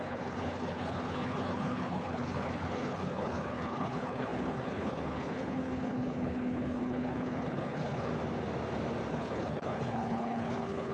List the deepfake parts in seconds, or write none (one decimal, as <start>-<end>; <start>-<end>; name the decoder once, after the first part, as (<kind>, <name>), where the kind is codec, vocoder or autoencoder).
0.0-8.1 (codec, HILCodec); 9.1-10.9